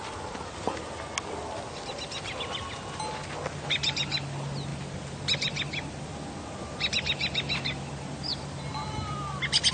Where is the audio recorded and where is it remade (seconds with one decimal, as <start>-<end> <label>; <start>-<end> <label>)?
0.0-9.7 recorded